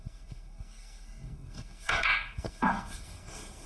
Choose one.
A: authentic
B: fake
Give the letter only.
B